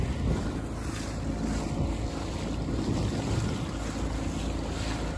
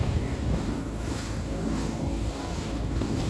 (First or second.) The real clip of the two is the first